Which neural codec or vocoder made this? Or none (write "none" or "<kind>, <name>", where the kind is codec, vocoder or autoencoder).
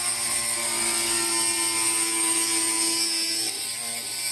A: none